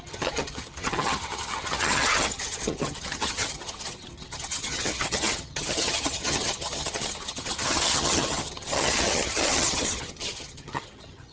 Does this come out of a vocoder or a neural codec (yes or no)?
yes